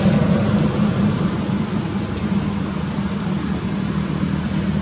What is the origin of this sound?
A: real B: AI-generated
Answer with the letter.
A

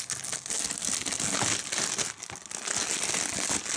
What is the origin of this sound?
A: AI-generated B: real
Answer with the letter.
B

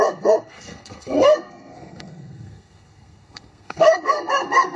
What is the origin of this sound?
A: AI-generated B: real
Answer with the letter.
A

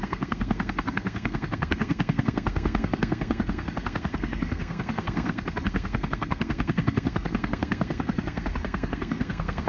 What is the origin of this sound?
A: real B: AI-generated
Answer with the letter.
B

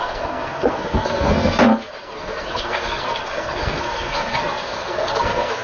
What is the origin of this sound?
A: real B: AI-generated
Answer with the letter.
B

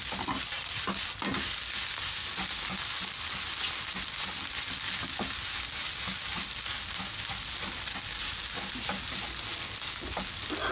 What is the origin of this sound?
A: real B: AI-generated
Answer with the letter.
A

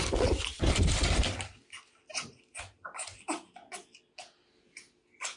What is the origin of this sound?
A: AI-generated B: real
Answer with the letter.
B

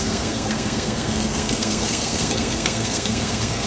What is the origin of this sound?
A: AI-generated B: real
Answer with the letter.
A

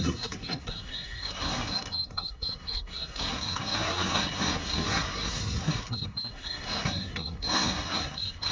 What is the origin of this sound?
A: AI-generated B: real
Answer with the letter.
A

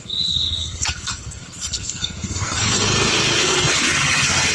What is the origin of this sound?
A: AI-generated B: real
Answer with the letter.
A